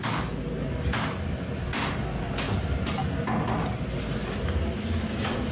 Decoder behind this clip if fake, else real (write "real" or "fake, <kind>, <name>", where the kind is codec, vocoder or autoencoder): real